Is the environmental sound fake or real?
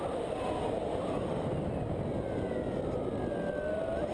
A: real